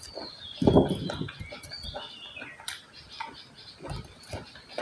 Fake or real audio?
real